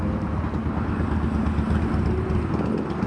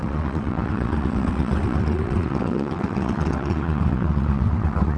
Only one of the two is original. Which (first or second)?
first